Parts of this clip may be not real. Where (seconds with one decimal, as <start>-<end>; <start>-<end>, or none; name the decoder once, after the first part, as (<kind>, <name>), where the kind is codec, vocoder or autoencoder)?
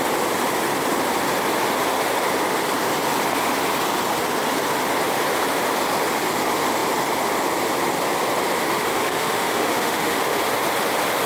8.9-10.4 (autoencoder, DAC-VAE)